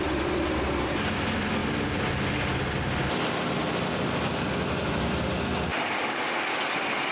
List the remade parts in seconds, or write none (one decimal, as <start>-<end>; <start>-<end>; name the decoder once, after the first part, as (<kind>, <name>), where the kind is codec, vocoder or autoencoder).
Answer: none